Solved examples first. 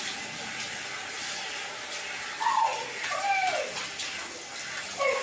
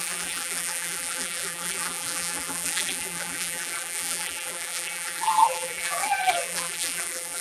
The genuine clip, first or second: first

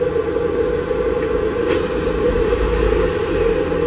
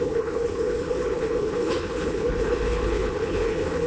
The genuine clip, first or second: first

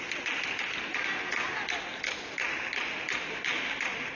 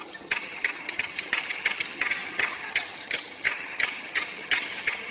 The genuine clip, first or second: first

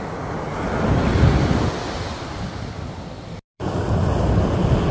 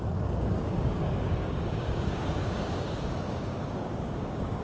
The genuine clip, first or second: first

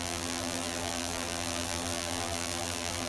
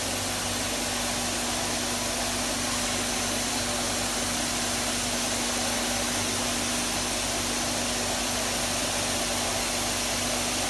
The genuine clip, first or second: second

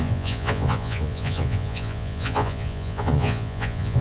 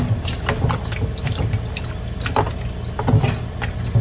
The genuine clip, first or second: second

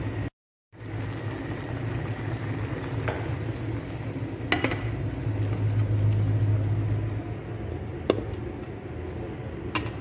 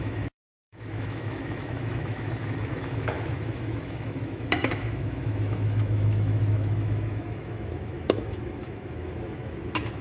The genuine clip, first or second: first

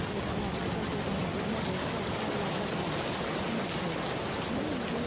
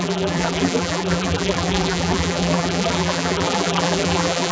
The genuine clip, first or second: first